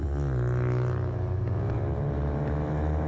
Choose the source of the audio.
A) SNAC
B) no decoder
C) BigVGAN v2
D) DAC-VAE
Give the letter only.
B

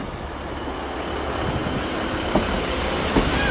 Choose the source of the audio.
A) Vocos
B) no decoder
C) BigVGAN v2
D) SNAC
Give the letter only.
B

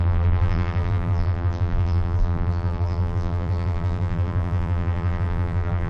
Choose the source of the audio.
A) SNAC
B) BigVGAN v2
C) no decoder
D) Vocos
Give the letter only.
B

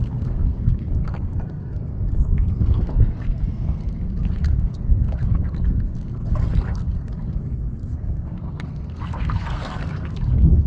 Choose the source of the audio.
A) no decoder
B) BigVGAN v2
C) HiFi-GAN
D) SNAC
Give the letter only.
D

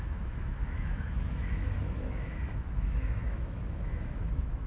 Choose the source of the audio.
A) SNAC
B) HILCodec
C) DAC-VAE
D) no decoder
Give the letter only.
C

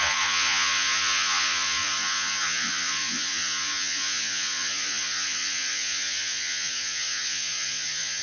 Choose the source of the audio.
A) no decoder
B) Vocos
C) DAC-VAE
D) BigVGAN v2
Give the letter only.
B